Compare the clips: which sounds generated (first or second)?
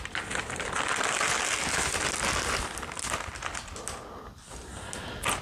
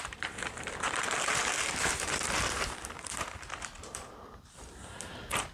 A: second